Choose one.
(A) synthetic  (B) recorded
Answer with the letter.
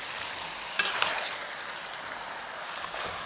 B